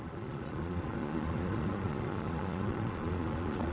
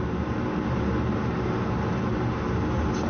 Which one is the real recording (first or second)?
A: second